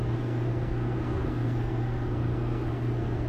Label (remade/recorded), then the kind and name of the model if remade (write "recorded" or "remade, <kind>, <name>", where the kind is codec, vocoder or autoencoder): remade, codec, SNAC